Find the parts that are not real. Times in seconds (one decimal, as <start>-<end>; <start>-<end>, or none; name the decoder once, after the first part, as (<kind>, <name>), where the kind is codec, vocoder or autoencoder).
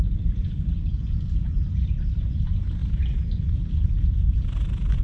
none